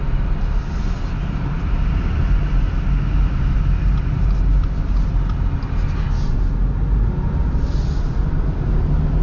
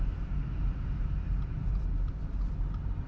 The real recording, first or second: first